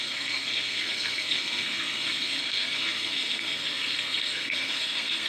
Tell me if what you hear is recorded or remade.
remade